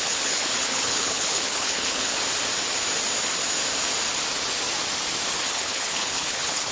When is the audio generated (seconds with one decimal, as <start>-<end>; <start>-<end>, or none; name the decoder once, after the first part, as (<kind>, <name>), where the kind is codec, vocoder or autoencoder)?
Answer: 0.0-2.1 (codec, HILCodec); 5.4-6.7